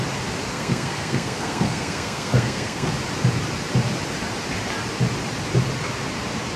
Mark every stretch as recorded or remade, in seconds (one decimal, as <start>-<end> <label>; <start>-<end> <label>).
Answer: 0.0-0.5 recorded; 0.5-2.9 remade; 2.9-6.6 recorded